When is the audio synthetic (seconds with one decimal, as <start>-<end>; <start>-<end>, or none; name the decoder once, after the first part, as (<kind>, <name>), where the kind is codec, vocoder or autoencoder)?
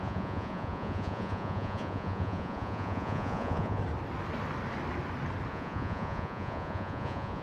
0.0-3.8 (vocoder, Vocos); 5.5-7.4